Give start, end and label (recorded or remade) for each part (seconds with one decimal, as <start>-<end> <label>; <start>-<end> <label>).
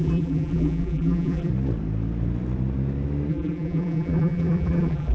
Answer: 0.0-1.5 remade; 1.5-3.3 recorded; 3.3-5.1 remade